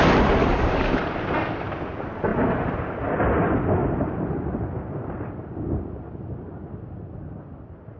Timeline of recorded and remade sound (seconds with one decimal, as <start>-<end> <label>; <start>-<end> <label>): 0.0-0.4 recorded; 0.4-1.0 remade; 1.0-8.0 recorded